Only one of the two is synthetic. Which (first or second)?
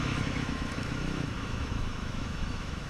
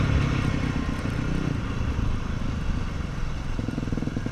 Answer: first